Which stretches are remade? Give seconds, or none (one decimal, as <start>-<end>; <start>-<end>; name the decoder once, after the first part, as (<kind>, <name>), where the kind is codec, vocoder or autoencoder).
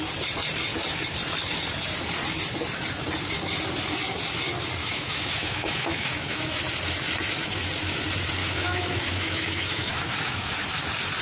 4.8-6.6 (autoencoder, DAC-VAE); 8.4-10.5